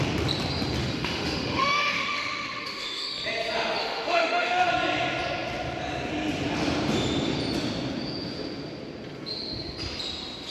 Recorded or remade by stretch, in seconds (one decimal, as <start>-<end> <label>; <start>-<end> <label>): 0.0-0.8 recorded; 0.8-3.1 remade; 3.1-3.8 recorded; 3.8-4.7 remade; 4.7-10.5 recorded